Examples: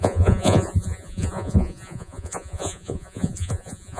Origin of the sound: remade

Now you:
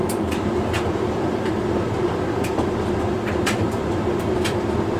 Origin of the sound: remade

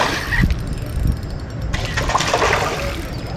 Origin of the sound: recorded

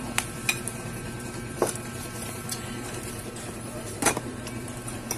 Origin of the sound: remade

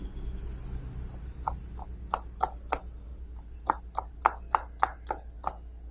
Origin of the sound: recorded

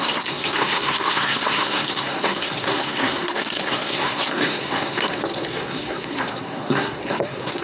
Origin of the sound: remade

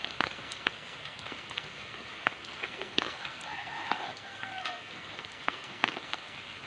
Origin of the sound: remade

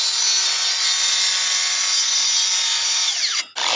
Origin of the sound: recorded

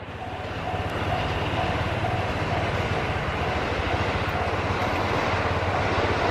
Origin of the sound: recorded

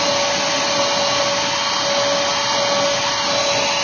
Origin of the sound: recorded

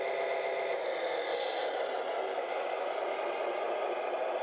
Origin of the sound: recorded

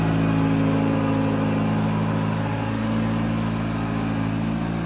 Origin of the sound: recorded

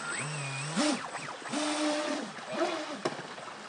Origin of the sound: recorded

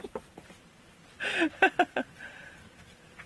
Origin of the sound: recorded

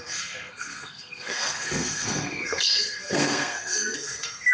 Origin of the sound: remade